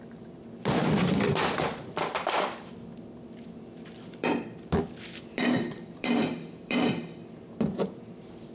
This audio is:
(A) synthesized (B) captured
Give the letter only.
A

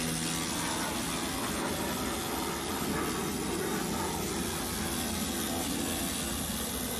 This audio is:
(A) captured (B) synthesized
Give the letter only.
A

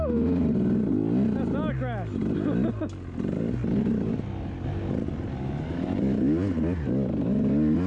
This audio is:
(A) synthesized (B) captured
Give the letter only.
B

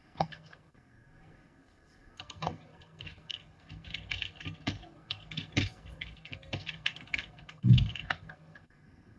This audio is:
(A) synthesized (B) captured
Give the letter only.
A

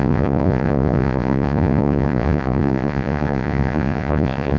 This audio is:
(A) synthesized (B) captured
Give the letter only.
A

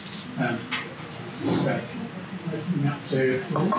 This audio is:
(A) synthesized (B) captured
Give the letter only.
B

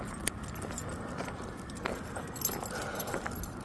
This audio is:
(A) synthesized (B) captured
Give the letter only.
B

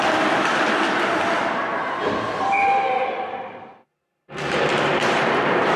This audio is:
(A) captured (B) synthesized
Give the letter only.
A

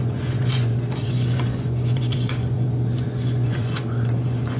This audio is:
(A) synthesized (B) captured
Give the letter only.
A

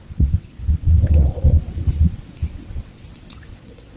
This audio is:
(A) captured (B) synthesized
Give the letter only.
B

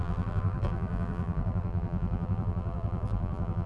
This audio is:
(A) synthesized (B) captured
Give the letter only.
A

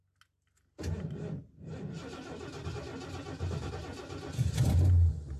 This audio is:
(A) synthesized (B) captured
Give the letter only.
B